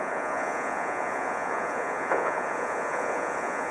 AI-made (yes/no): yes